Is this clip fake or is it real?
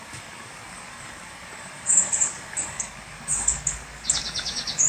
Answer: fake